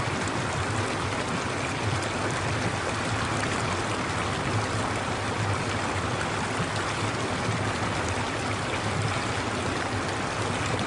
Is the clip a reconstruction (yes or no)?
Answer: no